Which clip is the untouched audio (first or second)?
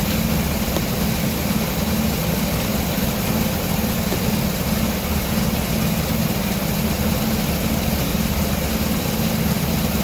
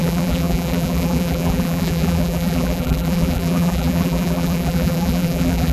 first